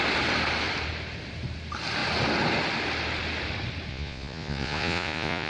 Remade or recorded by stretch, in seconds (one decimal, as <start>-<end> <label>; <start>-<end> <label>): 0.0-3.9 recorded; 3.9-5.5 remade